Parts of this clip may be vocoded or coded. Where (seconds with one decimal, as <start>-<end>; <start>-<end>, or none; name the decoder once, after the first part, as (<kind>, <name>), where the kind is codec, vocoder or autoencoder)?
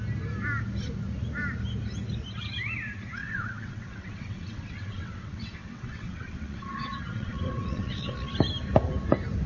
3.2-8.3 (vocoder, WaveNeXt)